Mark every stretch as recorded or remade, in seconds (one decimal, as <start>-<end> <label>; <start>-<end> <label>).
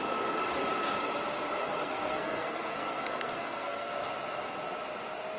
0.0-1.6 recorded; 1.6-3.9 remade; 3.9-5.4 recorded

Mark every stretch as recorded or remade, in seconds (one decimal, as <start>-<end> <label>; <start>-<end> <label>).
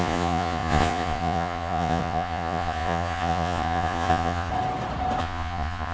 0.0-4.5 remade; 4.5-5.2 recorded; 5.2-5.9 remade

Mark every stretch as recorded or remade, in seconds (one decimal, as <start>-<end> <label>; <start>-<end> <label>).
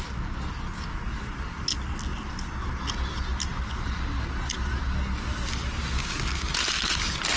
0.0-6.0 recorded; 6.0-6.5 remade; 6.5-7.4 recorded